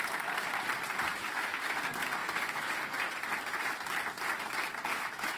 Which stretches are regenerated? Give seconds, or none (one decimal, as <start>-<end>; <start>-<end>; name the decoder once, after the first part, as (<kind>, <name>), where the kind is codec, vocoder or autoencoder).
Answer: 1.1-1.7 (autoencoder, DAC-VAE); 2.2-2.8; 4.9-5.4